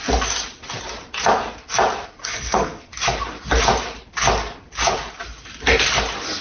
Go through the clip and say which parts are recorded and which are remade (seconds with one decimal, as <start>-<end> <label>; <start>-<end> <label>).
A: 0.0-2.2 recorded; 2.2-2.9 remade; 2.9-6.4 recorded